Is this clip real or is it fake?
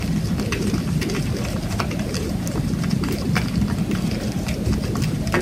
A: real